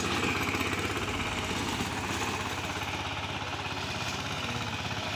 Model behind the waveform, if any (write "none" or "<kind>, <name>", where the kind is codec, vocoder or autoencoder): none